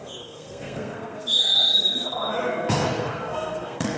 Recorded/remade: remade